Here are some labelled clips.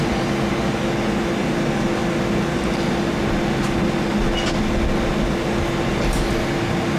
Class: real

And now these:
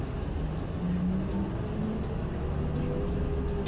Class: real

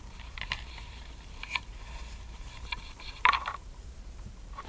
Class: fake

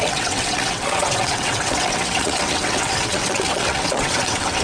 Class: fake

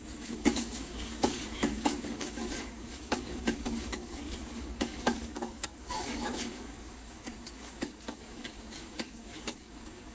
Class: fake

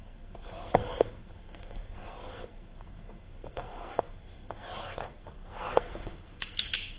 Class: fake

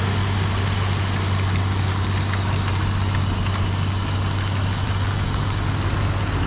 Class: real